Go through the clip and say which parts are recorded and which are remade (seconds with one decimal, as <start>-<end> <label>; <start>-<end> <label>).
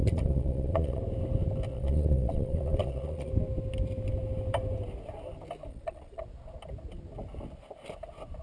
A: 0.0-1.0 remade; 1.0-1.7 recorded; 1.7-3.3 remade; 3.3-5.7 recorded; 5.7-6.2 remade; 6.2-8.4 recorded